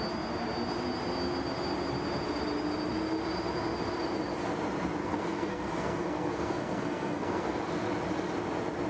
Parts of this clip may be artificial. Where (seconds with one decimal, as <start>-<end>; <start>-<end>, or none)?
5.0-7.6